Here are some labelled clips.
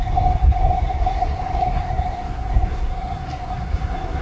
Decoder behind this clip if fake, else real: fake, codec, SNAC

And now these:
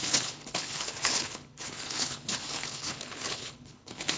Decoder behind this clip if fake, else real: fake, codec, HILCodec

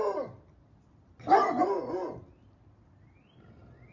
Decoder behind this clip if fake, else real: real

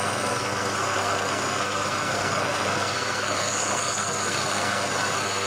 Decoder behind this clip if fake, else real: fake, codec, SNAC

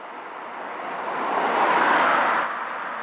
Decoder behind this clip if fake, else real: real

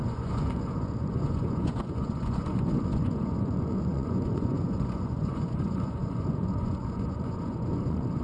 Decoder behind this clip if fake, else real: fake, vocoder, Vocos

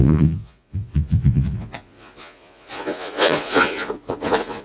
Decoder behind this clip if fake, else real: fake, vocoder, Vocos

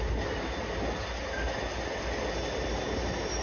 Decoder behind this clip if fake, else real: real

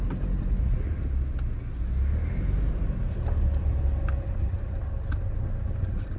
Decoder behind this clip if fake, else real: real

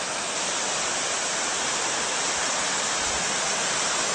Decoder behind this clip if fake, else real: real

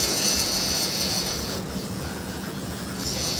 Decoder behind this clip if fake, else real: fake, vocoder, Vocos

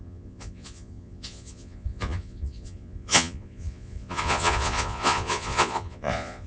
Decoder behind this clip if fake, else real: fake, vocoder, Vocos